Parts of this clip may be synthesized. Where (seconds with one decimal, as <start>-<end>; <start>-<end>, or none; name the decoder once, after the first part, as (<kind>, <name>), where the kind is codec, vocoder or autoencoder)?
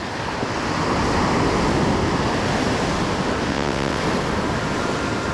3.5-4.0 (vocoder, WaveNeXt)